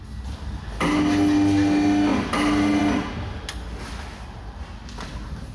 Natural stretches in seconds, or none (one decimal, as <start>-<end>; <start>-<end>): 0.0-5.5